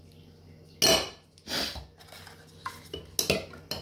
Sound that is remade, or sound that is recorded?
recorded